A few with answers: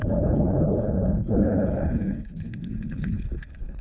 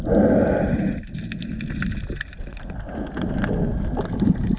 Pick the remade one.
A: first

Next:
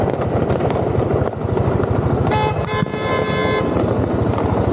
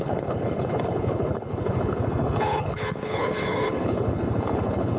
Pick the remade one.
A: second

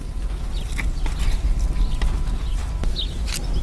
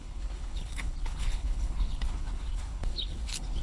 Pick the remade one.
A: second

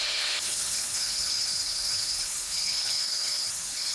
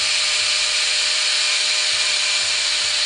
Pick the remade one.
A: first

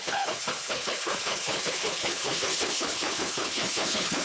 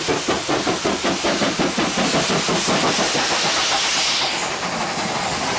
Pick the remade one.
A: first